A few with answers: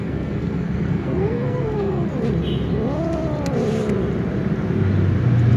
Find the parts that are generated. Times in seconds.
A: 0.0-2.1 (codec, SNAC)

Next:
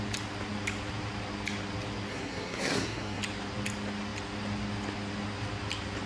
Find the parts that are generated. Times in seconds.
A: 2.1-3.2 (codec, SNAC)

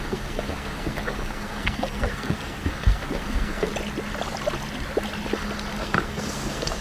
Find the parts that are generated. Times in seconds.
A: 0.0-3.7 (codec, SNAC); 5.8-6.8

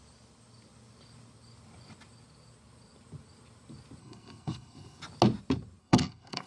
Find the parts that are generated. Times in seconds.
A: 4.0-5.0 (codec, SNAC); 5.8-6.5

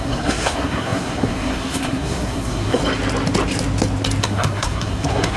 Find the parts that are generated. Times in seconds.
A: 0.0-2.8 (codec, SNAC); 4.2-5.4

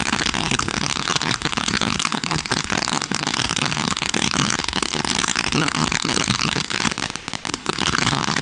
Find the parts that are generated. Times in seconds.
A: 0.0-6.9 (codec, SNAC); 7.5-8.4

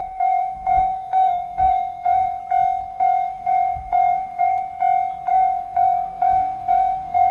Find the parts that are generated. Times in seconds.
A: 0.0-2.4 (codec, SNAC); 2.9-4.6; 5.3-7.3

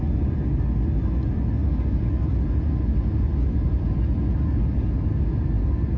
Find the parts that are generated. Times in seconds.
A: none